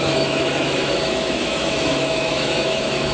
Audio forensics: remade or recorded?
remade